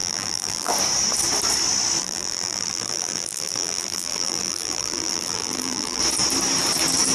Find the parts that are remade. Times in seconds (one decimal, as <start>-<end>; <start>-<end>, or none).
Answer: 0.0-0.7; 2.0-6.0